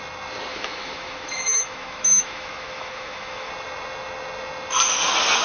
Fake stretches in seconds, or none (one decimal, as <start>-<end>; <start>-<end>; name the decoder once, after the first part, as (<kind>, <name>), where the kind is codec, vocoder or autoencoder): 0.5-3.5 (autoencoder, DAC-VAE)